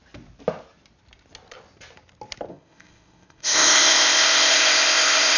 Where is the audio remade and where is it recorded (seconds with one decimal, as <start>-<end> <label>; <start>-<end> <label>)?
0.0-2.5 recorded; 2.5-5.4 remade